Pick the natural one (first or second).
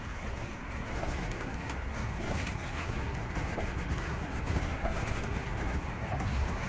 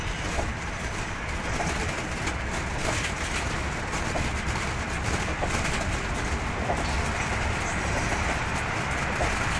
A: second